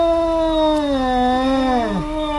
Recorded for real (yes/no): yes